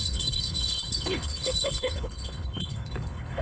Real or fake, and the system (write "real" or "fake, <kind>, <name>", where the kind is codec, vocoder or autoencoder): fake, codec, HILCodec